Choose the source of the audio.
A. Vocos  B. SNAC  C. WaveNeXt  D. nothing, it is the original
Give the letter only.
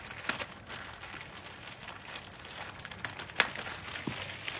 D